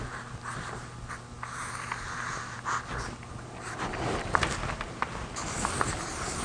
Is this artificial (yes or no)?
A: no